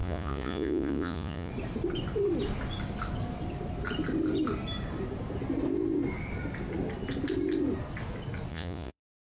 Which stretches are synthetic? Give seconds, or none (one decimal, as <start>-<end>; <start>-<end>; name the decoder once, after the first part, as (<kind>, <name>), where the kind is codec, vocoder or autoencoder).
0.0-1.5 (vocoder, Vocos); 8.5-9.0